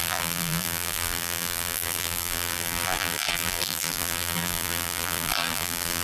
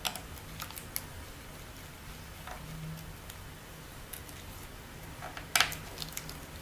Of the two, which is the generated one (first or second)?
first